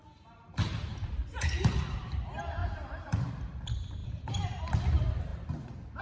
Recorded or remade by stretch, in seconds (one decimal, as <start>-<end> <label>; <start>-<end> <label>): 0.0-0.9 recorded; 0.9-1.8 remade; 1.8-2.6 recorded; 2.6-3.3 remade; 3.3-4.0 recorded; 4.0-4.8 remade; 4.8-6.0 recorded